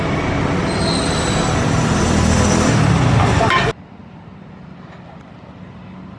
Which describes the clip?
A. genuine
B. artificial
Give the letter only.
A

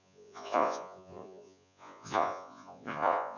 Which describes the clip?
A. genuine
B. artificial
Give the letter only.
B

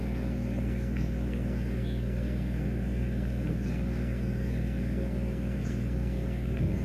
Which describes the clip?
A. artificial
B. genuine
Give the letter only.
A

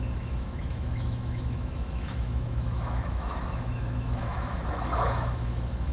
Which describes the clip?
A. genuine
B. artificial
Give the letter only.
B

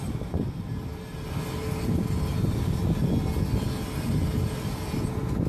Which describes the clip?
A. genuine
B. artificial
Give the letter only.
A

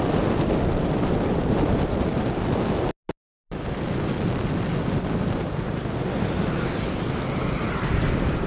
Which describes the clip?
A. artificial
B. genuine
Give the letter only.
B